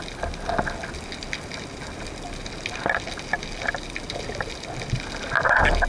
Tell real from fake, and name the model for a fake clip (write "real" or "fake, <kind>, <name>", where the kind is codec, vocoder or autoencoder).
real